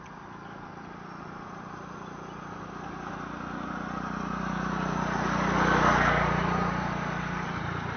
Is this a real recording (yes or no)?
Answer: yes